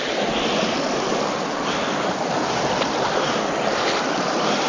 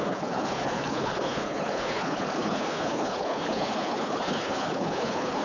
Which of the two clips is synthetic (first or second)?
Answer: second